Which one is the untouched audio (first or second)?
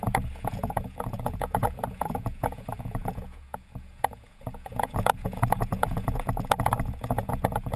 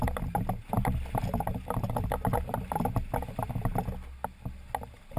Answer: second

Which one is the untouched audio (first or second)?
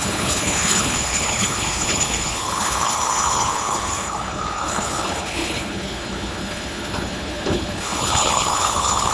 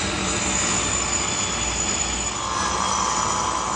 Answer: second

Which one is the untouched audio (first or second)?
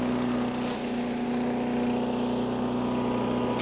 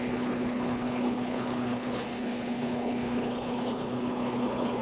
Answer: first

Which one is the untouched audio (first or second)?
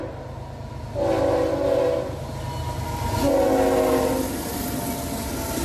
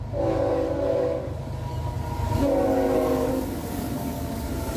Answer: first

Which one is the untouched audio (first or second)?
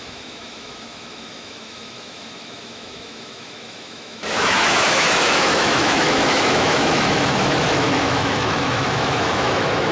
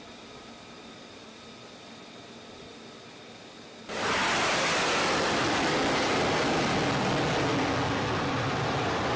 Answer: second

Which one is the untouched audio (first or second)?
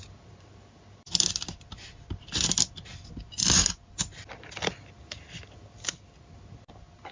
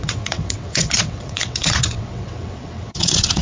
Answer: first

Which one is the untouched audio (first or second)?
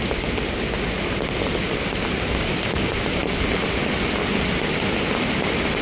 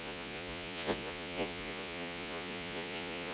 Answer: first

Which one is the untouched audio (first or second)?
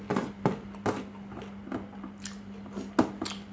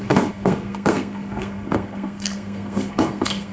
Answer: first